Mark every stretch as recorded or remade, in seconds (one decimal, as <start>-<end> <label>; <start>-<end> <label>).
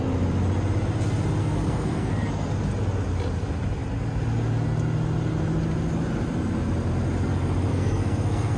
0.0-1.4 recorded; 1.4-2.1 remade; 2.1-7.7 recorded; 7.7-8.6 remade